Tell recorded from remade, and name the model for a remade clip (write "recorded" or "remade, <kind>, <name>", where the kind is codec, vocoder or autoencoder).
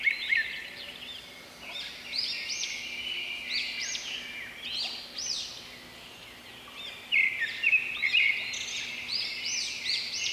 recorded